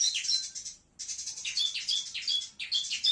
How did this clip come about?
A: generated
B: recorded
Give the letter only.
B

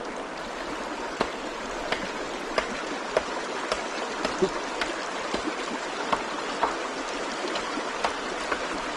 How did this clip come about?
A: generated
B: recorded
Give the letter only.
B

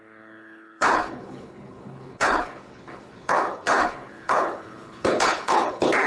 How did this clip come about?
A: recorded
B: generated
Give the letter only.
B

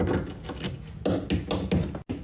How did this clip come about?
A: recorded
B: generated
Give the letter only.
A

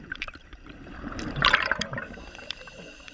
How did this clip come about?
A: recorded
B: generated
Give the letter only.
B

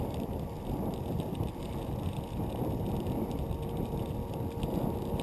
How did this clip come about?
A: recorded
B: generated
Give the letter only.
A